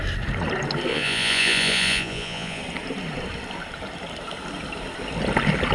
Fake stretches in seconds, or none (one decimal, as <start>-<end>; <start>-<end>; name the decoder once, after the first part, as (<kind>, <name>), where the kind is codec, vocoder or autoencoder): 0.9-2.6 (vocoder, Vocos)